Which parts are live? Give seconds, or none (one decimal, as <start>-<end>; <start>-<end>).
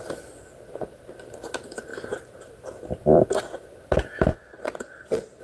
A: 0.0-4.3